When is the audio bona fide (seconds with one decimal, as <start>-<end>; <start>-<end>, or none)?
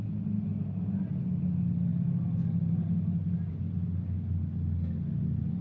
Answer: 0.0-5.6